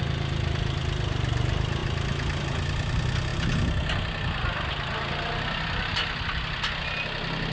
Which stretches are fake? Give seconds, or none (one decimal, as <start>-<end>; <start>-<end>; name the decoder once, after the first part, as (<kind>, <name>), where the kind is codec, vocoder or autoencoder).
none